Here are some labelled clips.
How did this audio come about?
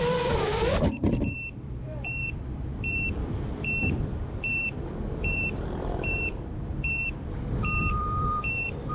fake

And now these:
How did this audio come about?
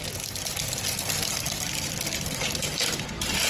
real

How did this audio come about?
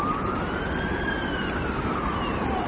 real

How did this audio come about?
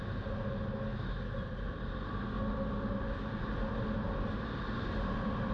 real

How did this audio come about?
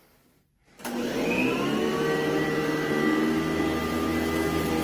real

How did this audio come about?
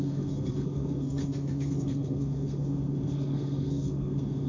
fake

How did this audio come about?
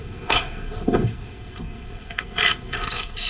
fake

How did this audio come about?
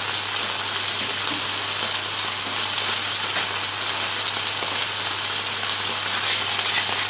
real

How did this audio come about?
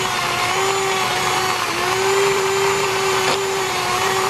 fake